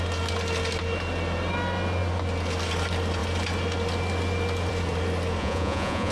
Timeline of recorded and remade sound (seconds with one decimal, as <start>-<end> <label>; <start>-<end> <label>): 0.0-5.4 recorded; 5.4-6.1 remade